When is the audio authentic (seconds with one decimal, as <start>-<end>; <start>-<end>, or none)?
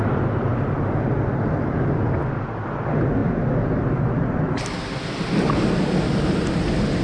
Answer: 0.0-7.0